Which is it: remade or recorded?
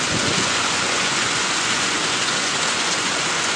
remade